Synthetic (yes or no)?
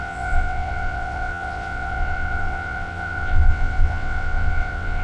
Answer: yes